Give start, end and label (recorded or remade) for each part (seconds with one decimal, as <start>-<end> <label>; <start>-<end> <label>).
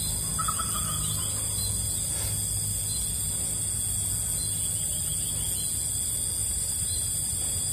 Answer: 0.0-6.4 recorded; 6.4-7.7 remade